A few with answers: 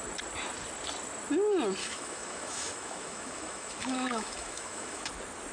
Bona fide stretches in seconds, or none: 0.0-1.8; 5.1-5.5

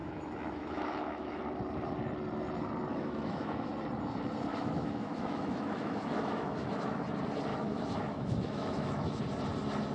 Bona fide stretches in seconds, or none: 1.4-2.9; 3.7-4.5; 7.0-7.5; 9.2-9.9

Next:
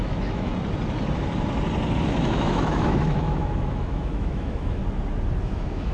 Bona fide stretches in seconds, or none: 0.5-2.2; 4.8-5.4

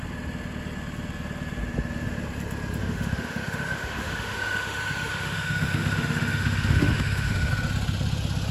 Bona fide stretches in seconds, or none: 0.0-2.8; 7.5-8.5

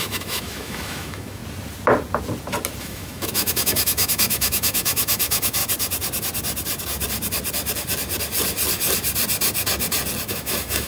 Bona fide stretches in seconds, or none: 1.4-2.8; 5.6-10.3

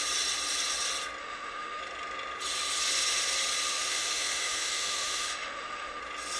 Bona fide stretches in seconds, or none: 0.0-1.2; 1.8-3.7; 6.0-6.4

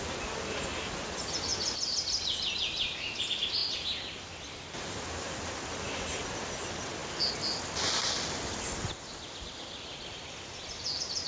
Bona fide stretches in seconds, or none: 0.0-11.3

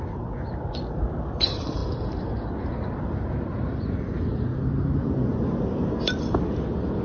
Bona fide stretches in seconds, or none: 0.0-7.0